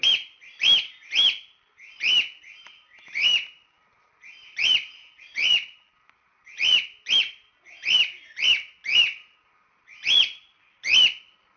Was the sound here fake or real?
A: real